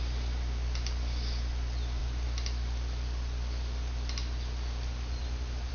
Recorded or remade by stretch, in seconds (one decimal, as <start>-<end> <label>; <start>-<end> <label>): 0.0-5.7 recorded